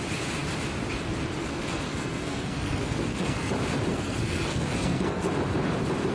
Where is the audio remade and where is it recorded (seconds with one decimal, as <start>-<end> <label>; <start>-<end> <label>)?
0.0-1.4 recorded; 1.4-3.5 remade; 3.5-3.9 recorded; 3.9-5.3 remade; 5.3-6.1 recorded